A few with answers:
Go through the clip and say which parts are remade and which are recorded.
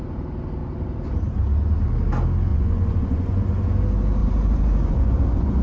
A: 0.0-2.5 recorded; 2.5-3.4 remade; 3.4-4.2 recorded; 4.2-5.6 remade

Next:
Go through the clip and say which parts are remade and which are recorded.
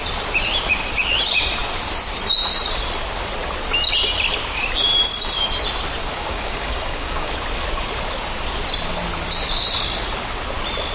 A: 0.0-6.0 recorded; 6.0-7.3 remade; 7.3-10.9 recorded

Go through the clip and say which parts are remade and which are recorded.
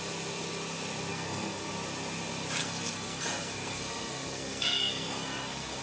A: 0.0-1.1 recorded; 1.1-1.7 remade; 1.7-2.6 recorded; 2.6-5.8 remade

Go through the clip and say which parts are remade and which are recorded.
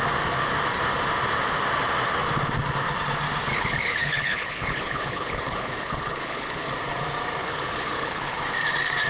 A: 0.0-3.5 recorded; 3.5-6.7 remade; 6.7-7.4 recorded; 7.4-8.4 remade; 8.4-9.1 recorded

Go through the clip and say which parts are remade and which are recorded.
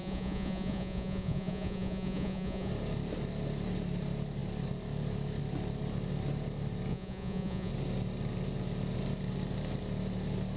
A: 0.0-2.7 remade; 2.7-6.9 recorded; 6.9-7.7 remade; 7.7-10.6 recorded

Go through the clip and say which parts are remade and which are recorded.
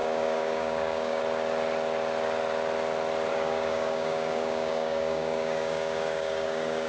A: 0.0-1.2 remade; 1.2-3.3 recorded; 3.3-6.9 remade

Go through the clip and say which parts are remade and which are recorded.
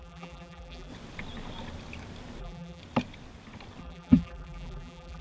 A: 0.0-0.9 remade; 0.9-2.4 recorded; 2.4-2.8 remade; 2.8-3.8 recorded; 3.8-5.2 remade